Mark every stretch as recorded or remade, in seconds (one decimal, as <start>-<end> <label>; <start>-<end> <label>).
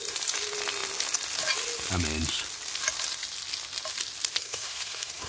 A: 0.0-4.4 recorded; 4.4-5.3 remade